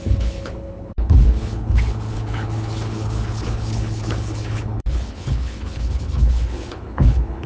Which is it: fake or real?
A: fake